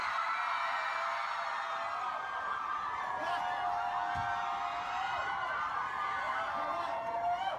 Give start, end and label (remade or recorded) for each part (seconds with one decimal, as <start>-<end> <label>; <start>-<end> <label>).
0.0-4.6 recorded; 4.6-7.6 remade